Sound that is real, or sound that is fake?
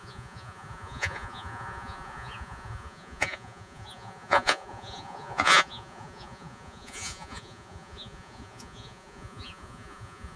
fake